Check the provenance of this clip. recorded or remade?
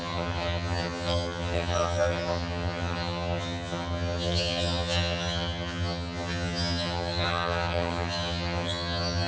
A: remade